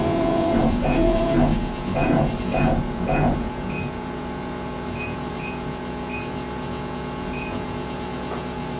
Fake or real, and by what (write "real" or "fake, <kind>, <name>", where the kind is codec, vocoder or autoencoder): fake, vocoder, Vocos